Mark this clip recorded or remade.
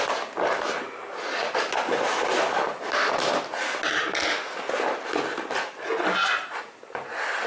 recorded